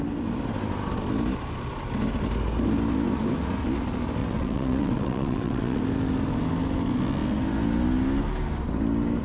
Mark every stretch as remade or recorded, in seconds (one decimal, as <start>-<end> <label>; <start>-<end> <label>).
0.0-4.2 recorded; 4.2-5.8 remade; 5.8-9.2 recorded